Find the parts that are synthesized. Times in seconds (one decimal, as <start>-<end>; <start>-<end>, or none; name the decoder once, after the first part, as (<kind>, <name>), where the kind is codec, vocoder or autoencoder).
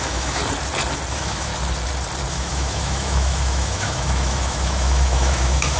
0.0-0.4 (autoencoder, DAC-VAE); 1.1-1.5; 2.3-5.8